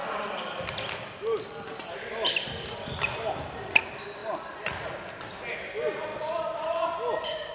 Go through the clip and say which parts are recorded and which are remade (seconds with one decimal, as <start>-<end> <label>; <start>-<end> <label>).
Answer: 0.0-3.3 remade; 3.3-6.1 recorded; 6.1-6.8 remade; 6.8-7.5 recorded